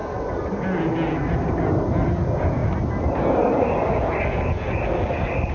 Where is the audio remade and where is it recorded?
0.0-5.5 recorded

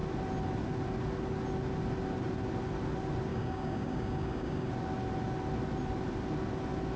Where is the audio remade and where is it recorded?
0.0-3.3 recorded; 3.3-4.7 remade; 4.7-7.0 recorded